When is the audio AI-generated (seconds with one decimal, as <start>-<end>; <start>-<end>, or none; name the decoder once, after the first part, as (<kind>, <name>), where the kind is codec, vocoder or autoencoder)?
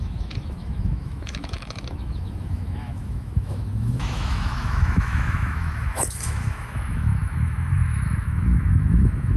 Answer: 0.0-9.4 (autoencoder, DAC-VAE)